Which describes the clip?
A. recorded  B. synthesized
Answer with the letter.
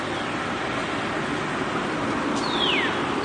A